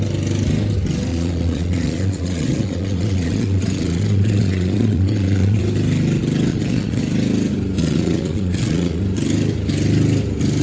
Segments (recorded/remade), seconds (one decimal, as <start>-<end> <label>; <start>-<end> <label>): 0.0-1.1 recorded; 1.1-5.6 remade; 5.6-6.5 recorded; 6.5-7.0 remade; 7.0-7.8 recorded; 7.8-9.0 remade; 9.0-10.6 recorded